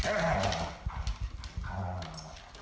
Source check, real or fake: real